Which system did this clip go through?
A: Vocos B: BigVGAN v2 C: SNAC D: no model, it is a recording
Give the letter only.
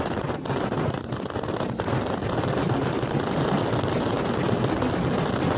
D